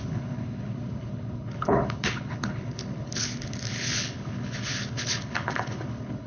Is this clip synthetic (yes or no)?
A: yes